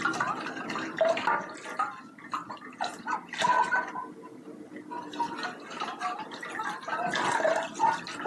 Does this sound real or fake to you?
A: real